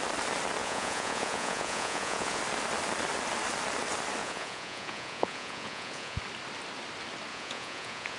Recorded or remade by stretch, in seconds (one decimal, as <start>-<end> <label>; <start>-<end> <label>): 0.0-0.6 recorded; 0.6-2.4 remade; 2.4-4.2 recorded; 4.2-6.2 remade; 6.2-7.3 recorded; 7.3-8.2 remade